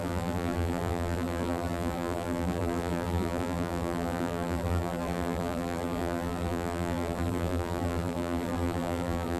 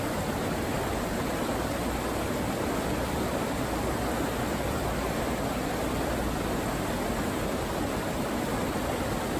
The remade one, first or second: first